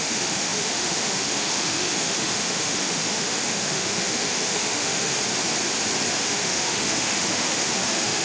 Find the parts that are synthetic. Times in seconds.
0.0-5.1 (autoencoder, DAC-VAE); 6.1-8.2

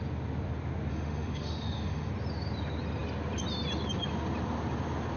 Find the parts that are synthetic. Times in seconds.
0.9-2.1 (autoencoder, DAC-VAE)

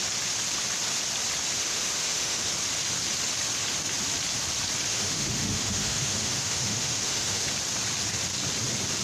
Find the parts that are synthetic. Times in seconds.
1.6-2.5 (autoencoder, DAC-VAE); 4.9-7.5

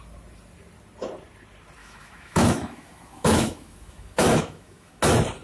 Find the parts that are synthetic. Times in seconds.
1.8-5.0 (autoencoder, DAC-VAE)

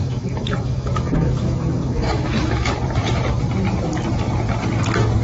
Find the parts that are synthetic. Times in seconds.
0.0-2.7 (autoencoder, DAC-VAE)

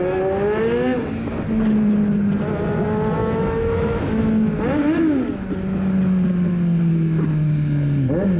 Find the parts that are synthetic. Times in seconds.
3.2-4.2 (autoencoder, DAC-VAE)

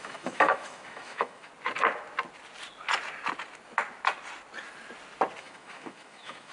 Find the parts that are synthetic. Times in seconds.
0.0-1.5 (autoencoder, DAC-VAE); 5.4-6.5

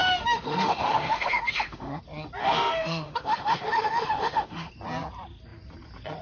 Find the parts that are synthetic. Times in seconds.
0.0-2.0 (autoencoder, DAC-VAE); 2.4-4.7